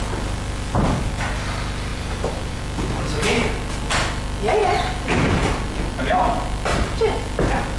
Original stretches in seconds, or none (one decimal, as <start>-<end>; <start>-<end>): 0.0-1.9; 2.6-7.8

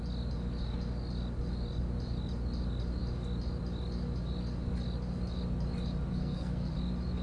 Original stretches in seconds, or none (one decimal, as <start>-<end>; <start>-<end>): 0.0-6.1; 6.7-7.2

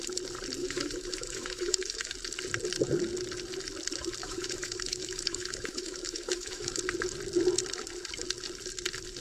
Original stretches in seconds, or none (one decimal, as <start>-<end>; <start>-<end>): 0.0-0.6; 2.1-4.2; 6.8-9.2

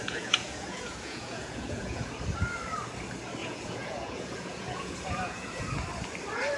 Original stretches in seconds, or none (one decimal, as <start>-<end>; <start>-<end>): 2.1-3.4; 5.6-6.6

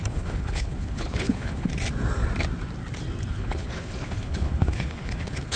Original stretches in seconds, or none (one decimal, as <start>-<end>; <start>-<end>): 1.7-3.3

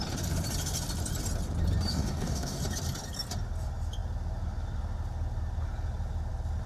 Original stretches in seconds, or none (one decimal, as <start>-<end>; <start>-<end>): 0.0-1.9; 2.6-6.7

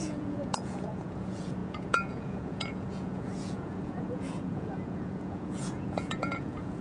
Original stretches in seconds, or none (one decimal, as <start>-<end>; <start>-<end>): none

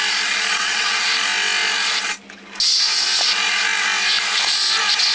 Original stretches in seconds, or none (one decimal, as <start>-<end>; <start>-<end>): 0.0-0.5; 1.0-5.1